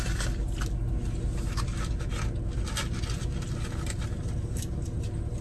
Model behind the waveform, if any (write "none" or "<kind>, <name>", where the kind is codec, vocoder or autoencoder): none